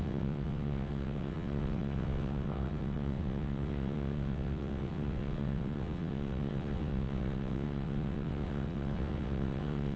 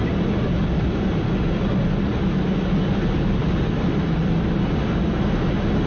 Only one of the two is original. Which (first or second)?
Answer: second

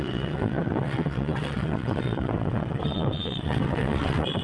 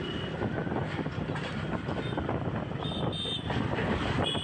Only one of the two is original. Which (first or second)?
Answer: second